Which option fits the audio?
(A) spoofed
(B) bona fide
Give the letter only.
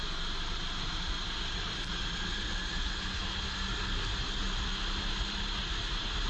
B